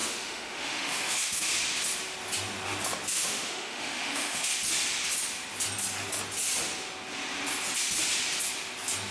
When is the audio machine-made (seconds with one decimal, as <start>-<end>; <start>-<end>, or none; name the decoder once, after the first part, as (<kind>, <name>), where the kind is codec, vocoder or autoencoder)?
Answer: 0.0-1.5 (autoencoder, DAC-VAE); 3.1-4.5